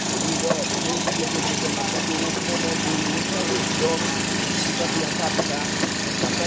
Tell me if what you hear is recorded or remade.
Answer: remade